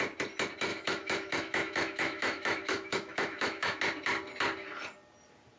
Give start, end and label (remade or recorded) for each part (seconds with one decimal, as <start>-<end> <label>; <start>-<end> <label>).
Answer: 0.0-0.7 recorded; 0.7-3.8 remade; 3.8-5.6 recorded